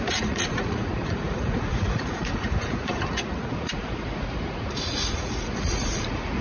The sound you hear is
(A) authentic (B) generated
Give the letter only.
B